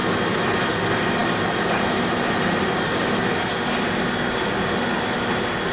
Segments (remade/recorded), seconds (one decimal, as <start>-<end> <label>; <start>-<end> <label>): 0.0-5.7 recorded